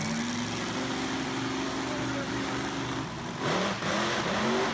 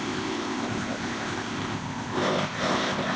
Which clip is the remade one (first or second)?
second